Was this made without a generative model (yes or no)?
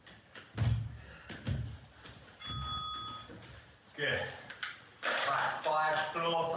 yes